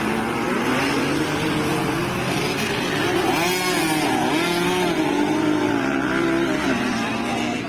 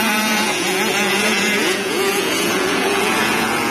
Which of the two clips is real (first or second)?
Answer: first